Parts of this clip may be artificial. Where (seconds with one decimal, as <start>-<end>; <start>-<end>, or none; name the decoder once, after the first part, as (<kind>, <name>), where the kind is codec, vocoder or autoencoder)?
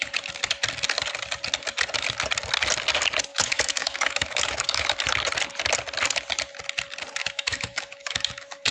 3.3-5.0 (autoencoder, DAC-VAE); 7.2-8.7